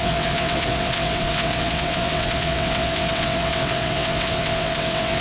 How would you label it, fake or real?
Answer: fake